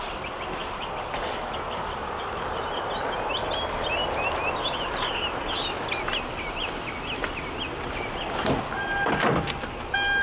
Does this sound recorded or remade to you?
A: recorded